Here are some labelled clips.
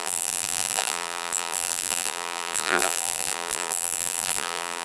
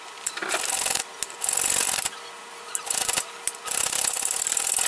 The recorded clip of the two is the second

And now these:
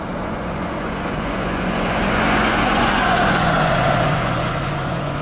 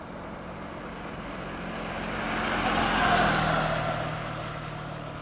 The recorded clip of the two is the second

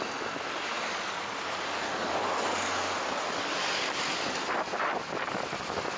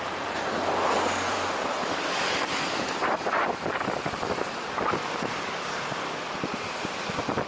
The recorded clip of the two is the first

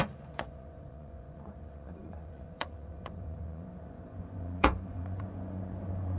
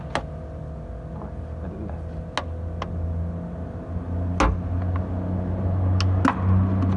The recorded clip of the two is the second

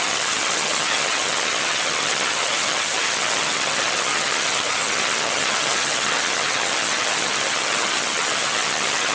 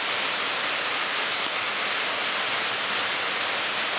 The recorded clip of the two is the second